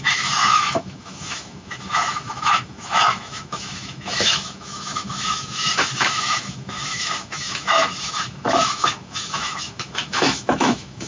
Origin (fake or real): fake